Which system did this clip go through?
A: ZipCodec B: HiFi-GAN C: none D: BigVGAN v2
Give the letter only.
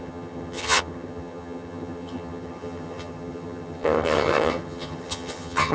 B